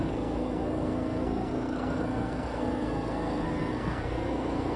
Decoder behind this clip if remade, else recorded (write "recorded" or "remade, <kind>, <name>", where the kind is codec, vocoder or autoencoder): remade, codec, SNAC